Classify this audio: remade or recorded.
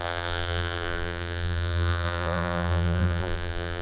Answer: remade